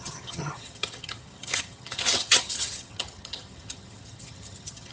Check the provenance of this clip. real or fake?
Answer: fake